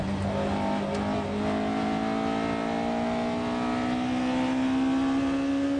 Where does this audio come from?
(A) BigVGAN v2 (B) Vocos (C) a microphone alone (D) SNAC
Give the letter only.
C